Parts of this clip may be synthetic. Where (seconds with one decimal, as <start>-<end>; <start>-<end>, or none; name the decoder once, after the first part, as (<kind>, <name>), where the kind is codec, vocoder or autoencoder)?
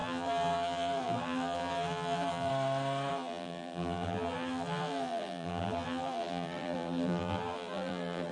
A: 0.0-2.5 (vocoder, BigVGAN v2); 3.1-8.3